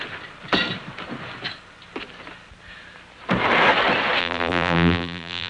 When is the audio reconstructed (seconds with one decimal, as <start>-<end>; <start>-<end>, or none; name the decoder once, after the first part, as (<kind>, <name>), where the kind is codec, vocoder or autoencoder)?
4.2-5.5 (vocoder, BigVGAN v2)